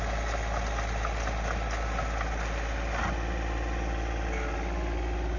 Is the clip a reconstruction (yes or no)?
no